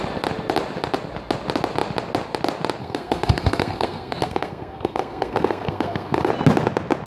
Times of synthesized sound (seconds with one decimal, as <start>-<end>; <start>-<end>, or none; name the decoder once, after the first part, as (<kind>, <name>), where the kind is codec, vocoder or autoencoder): 2.8-6.3 (codec, SNAC)